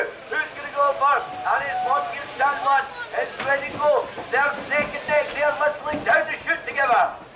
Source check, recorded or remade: recorded